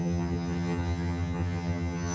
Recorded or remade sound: remade